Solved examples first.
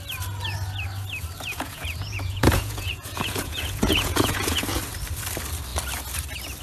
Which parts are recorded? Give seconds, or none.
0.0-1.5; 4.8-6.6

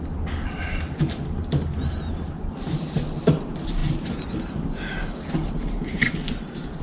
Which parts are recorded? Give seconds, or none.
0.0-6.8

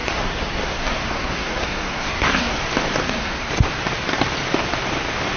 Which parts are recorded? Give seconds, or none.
2.6-3.0; 3.5-5.4

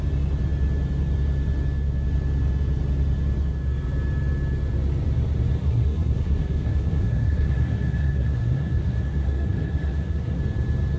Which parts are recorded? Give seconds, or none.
0.0-5.6; 10.4-11.0

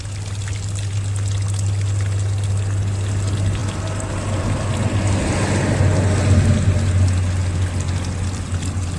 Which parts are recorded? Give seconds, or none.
0.0-9.0

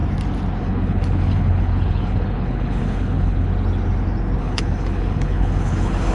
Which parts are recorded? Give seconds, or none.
0.0-0.6; 3.5-4.4

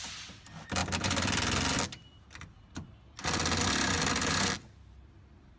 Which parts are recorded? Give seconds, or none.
0.0-5.6